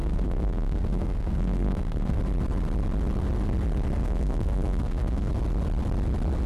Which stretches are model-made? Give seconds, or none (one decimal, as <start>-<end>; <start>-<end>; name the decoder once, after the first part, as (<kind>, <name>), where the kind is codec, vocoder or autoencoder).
0.0-2.2 (codec, SNAC); 4.0-5.3